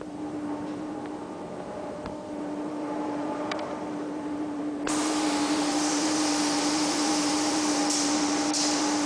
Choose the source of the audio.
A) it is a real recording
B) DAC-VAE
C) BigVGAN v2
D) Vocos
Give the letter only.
C